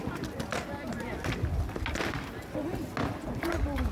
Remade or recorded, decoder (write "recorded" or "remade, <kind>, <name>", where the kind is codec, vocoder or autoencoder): recorded